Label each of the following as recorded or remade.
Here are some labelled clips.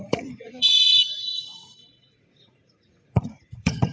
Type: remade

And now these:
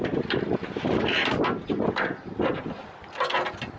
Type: recorded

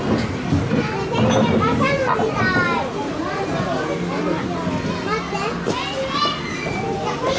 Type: recorded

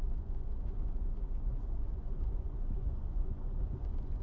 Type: remade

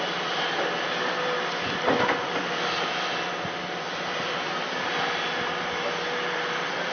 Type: recorded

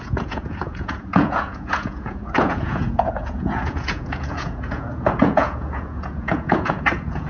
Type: remade